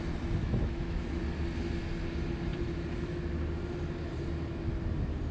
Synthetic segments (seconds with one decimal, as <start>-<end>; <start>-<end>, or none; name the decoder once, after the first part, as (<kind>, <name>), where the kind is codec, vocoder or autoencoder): 0.4-1.2 (autoencoder, DAC-VAE)